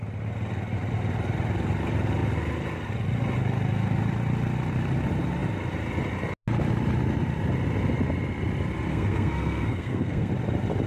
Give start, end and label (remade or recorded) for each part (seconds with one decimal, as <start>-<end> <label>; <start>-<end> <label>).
0.0-8.9 recorded; 8.9-10.3 remade; 10.3-10.9 recorded